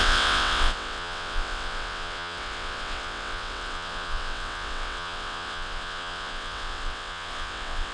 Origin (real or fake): fake